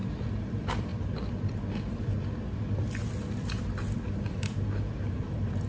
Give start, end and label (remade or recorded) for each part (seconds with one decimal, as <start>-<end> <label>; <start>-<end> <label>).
0.0-0.5 recorded; 0.5-0.9 remade; 0.9-4.3 recorded; 4.3-5.7 remade